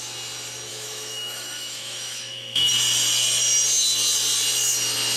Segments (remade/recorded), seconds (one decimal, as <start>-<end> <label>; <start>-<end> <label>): 0.0-0.7 recorded; 0.7-2.7 remade; 2.7-5.2 recorded